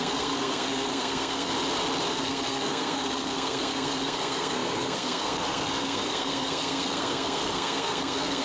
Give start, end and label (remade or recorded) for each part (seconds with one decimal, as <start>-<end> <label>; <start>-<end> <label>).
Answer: 0.0-1.5 remade; 1.5-2.1 recorded; 2.1-8.4 remade